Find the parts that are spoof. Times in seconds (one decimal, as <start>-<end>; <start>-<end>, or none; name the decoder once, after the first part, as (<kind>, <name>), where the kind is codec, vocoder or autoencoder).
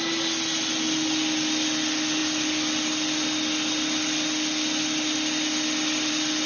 none